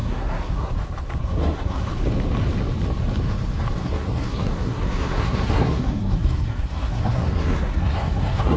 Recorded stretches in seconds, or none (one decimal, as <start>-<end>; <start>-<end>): 0.7-1.2; 1.9-3.8